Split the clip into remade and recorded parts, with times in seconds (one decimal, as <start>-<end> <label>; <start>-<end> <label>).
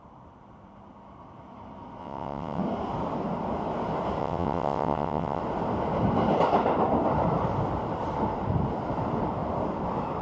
0.0-2.0 recorded; 2.0-2.6 remade; 2.6-4.2 recorded; 4.2-5.4 remade; 5.4-10.2 recorded